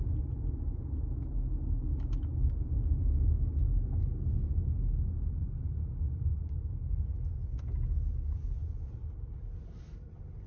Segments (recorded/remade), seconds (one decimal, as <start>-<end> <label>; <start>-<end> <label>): 0.0-10.5 recorded